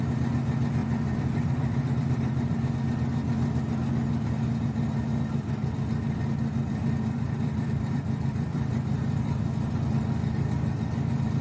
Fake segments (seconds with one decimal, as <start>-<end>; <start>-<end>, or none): 0.8-2.7; 6.6-9.4